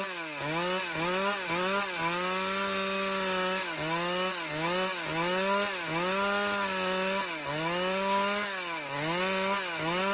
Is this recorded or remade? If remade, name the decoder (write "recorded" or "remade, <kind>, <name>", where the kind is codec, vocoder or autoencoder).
recorded